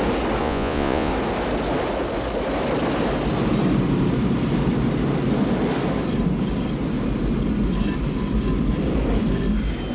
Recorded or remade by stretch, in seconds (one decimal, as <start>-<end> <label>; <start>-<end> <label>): 0.0-0.4 recorded; 0.4-1.1 remade; 1.1-9.9 recorded